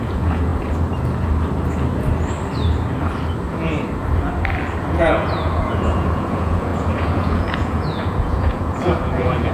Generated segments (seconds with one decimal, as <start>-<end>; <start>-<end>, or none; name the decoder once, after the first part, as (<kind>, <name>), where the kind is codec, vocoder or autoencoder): 0.0-0.5 (vocoder, Vocos); 4.9-9.5